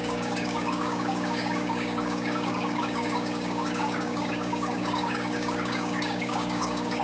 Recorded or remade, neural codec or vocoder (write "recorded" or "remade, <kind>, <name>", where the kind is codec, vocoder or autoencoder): remade, codec, DAC